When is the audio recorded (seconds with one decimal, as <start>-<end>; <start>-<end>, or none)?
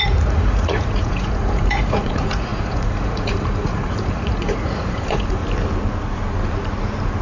5.4-7.2